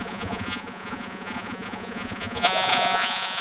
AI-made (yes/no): yes